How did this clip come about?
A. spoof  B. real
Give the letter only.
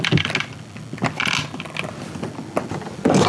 B